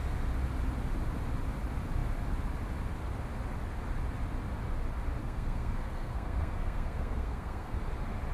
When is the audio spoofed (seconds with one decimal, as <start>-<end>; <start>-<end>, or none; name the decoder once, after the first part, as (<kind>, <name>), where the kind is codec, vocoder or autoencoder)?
5.2-7.8 (codec, SNAC)